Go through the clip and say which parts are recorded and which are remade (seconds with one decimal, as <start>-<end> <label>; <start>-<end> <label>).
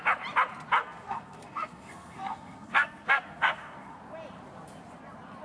0.0-0.8 recorded; 0.8-4.0 remade; 4.0-5.4 recorded